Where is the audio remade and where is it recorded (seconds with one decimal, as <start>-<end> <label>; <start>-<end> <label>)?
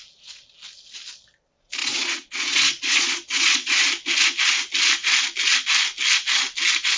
0.0-1.8 recorded; 1.8-3.9 remade; 3.9-7.0 recorded